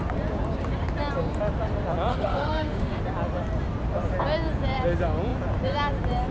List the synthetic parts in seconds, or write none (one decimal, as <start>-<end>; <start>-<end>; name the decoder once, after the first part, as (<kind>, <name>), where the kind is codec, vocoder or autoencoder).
2.1-3.0 (autoencoder, DAC-VAE)